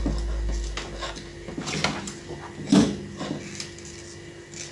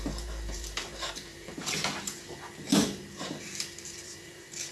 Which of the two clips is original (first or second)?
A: first